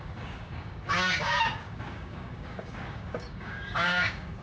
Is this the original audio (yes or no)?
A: no